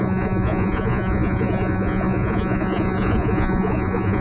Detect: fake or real fake